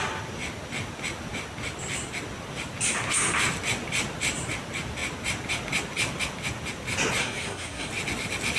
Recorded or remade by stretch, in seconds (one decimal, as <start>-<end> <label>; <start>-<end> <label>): 0.0-7.2 recorded; 7.2-7.9 remade; 7.9-8.6 recorded